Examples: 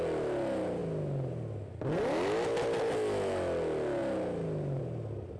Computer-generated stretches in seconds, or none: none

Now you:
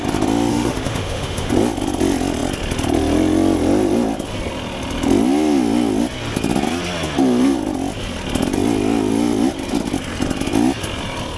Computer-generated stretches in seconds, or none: 0.5-1.5 (autoencoder, DAC-VAE)

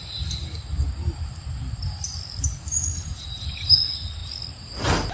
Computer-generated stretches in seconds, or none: none

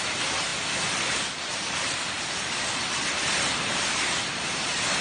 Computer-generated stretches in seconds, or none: none